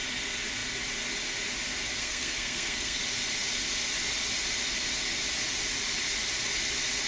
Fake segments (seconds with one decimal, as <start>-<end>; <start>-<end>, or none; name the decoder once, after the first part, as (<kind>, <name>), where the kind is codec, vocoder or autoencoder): 2.0-3.0 (codec, SNAC)